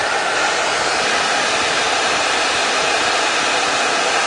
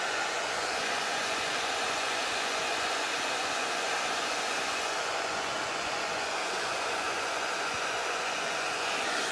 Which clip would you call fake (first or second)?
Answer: second